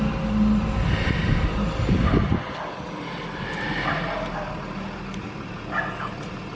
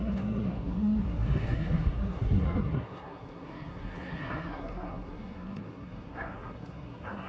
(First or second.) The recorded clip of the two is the first